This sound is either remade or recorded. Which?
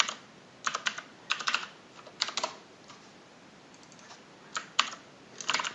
recorded